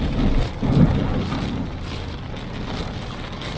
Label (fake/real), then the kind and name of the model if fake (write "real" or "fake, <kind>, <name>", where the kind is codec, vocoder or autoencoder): real